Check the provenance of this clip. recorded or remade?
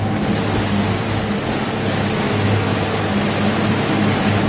recorded